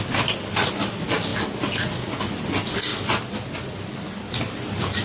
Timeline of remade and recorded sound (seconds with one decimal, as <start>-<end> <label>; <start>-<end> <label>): 0.0-5.0 recorded